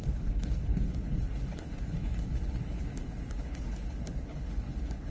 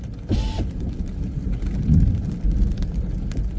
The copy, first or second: first